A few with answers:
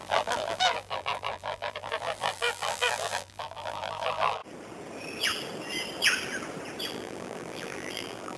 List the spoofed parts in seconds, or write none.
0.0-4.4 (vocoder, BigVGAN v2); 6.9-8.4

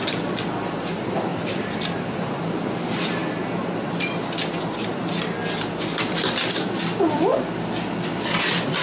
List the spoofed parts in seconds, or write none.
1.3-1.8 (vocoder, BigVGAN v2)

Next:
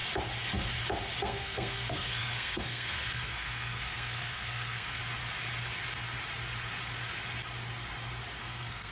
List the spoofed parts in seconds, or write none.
1.2-5.0 (codec, SNAC); 8.4-8.9

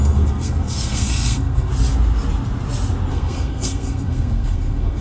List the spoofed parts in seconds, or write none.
0.0-1.7 (codec, SNAC); 3.1-5.0